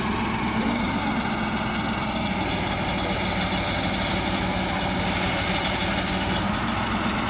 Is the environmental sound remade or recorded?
recorded